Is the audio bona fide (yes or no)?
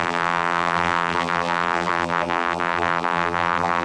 no